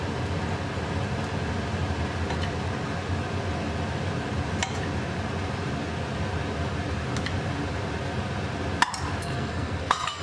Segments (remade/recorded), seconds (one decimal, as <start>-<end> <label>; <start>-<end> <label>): 0.0-9.2 recorded; 9.2-10.2 remade